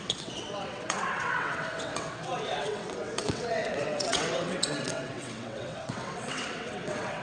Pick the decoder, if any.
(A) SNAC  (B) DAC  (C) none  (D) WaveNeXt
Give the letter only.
D